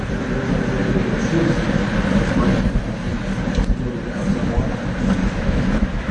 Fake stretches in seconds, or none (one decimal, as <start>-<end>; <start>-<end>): 5.2-6.1

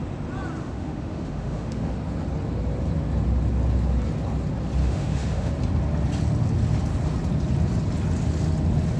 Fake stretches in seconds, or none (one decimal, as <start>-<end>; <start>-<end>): 0.6-1.9; 4.8-5.5

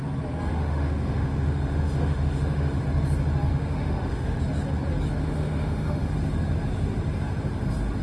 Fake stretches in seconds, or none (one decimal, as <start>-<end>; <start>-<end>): 0.5-2.8; 3.5-4.4; 5.2-6.1

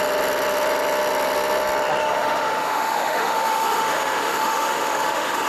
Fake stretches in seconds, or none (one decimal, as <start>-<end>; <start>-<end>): 2.0-5.5

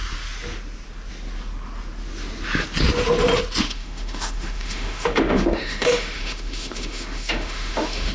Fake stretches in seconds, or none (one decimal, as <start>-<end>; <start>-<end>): 3.6-8.1

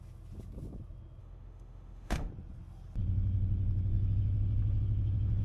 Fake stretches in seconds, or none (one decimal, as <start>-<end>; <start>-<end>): 1.2-2.3

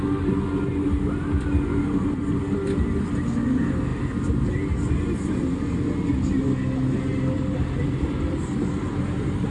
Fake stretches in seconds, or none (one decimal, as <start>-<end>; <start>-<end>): none